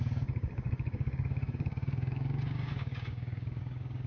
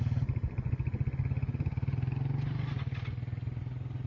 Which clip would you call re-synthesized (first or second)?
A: first